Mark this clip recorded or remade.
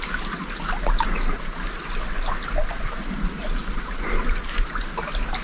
recorded